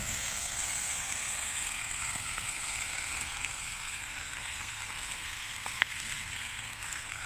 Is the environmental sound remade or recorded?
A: remade